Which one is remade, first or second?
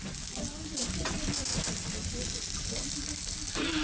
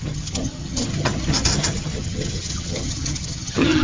second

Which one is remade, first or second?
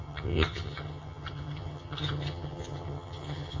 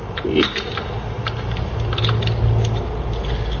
first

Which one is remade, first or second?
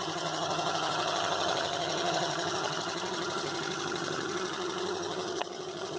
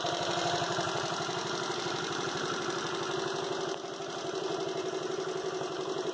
first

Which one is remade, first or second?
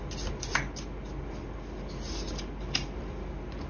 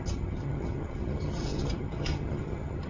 second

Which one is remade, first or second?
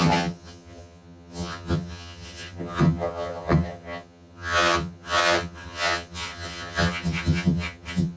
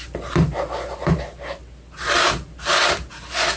first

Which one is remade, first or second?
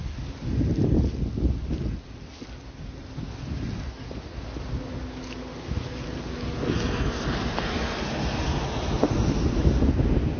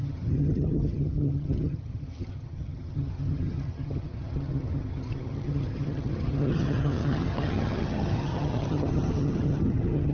second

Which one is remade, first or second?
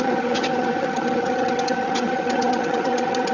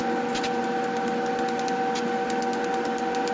first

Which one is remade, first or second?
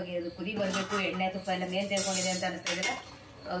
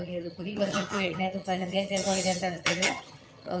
second